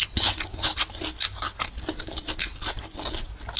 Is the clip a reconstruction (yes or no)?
no